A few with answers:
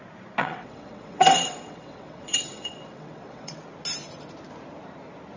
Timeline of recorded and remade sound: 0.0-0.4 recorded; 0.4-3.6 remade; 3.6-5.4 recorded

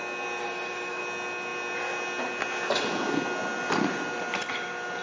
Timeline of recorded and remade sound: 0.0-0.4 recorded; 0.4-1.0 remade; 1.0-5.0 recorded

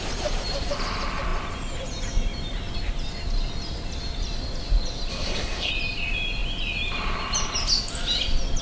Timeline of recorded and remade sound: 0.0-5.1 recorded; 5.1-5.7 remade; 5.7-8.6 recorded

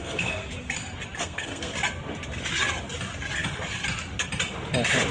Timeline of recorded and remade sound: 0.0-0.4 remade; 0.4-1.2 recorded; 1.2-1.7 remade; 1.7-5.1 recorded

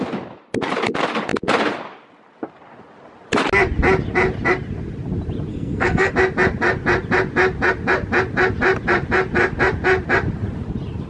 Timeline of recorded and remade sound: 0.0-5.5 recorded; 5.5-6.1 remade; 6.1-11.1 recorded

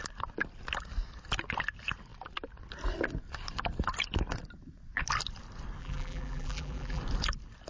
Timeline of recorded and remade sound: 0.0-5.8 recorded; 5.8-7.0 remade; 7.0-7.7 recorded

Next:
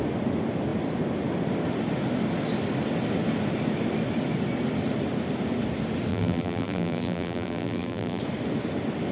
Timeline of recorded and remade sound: 0.0-6.1 recorded; 6.1-8.2 remade; 8.2-9.1 recorded